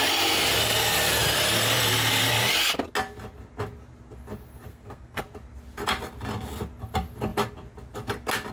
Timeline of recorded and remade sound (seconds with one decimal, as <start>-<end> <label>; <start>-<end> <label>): 0.0-4.7 recorded; 4.7-5.2 remade; 5.2-8.5 recorded